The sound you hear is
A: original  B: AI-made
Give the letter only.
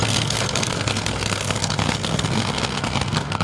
B